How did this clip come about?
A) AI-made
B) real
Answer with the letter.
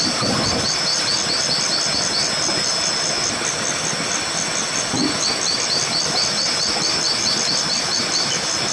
B